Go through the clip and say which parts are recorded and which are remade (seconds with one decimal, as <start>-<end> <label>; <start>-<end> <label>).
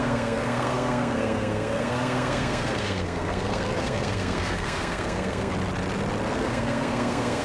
0.0-5.5 remade; 5.5-6.3 recorded; 6.3-7.4 remade